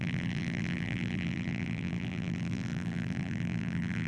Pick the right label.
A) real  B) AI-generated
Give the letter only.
B